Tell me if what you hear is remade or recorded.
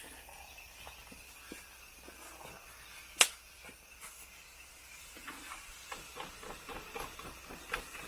recorded